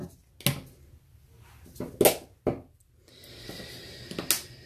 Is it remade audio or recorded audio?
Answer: recorded